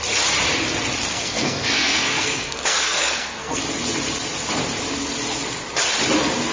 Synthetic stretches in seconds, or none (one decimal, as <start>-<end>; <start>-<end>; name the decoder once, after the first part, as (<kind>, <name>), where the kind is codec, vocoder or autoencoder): 1.1-3.6 (codec, SNAC)